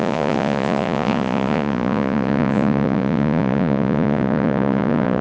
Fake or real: fake